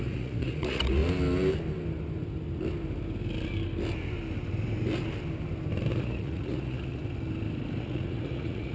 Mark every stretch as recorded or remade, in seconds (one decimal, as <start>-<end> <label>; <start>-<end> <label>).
0.0-1.0 remade; 1.0-5.9 recorded; 5.9-7.0 remade; 7.0-7.8 recorded; 7.8-8.7 remade